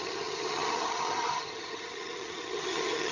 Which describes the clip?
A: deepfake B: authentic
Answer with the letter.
A